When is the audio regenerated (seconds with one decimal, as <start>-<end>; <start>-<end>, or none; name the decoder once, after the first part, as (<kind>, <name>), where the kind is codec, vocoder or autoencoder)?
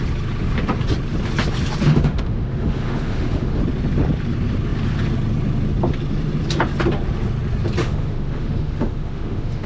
1.9-3.6 (autoencoder, DAC-VAE); 7.8-9.7